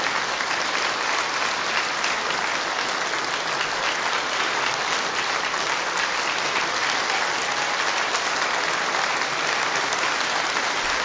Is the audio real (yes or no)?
yes